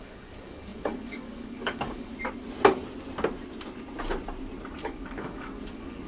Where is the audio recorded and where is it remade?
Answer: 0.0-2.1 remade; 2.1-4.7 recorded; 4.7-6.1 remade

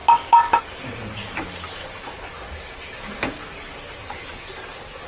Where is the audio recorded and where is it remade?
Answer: 0.0-0.6 remade; 0.6-5.1 recorded